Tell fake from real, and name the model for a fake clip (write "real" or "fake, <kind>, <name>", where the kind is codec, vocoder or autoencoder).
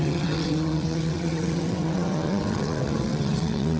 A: fake, vocoder, WaveNeXt